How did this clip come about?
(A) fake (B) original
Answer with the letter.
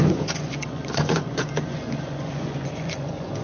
A